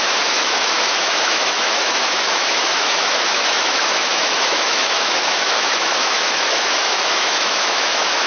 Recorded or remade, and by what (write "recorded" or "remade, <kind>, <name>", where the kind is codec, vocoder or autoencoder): remade, autoencoder, DAC-VAE